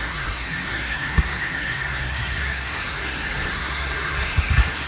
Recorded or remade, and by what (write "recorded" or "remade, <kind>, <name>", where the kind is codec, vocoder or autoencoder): remade, codec, SNAC